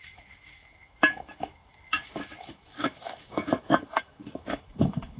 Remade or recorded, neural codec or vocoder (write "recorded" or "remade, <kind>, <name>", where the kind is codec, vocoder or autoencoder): remade, autoencoder, DAC-VAE